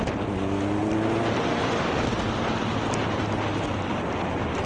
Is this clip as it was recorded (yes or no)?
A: yes